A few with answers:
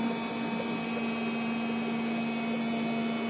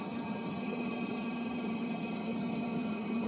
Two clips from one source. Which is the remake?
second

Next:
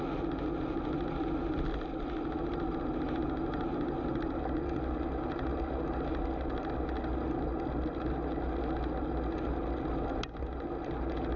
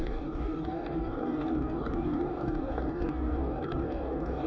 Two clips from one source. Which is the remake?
second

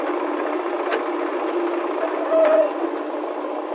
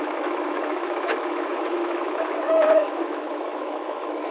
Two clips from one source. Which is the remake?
second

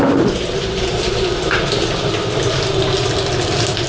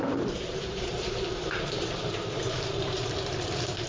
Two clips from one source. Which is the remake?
second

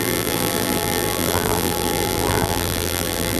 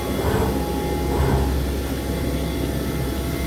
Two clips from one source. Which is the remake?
first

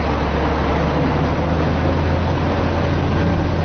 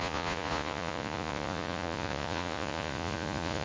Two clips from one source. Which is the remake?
second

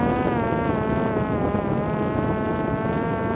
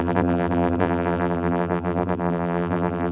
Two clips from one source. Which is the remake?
second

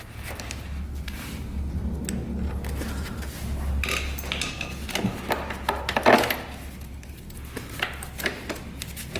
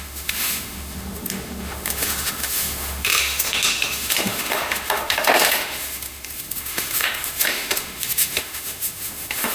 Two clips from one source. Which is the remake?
second